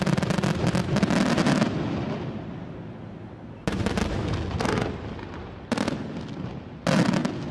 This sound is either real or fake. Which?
real